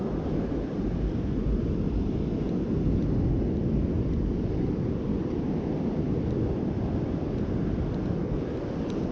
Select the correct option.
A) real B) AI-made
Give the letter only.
A